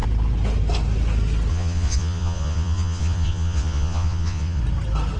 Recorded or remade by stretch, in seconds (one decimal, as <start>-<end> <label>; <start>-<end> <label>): 0.0-1.5 recorded; 1.5-4.6 remade; 4.6-5.2 recorded